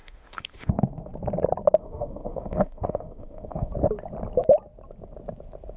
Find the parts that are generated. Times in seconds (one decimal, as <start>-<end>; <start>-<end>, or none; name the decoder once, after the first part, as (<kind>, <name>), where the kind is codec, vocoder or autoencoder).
0.0-1.1 (autoencoder, DAC-VAE); 1.8-3.7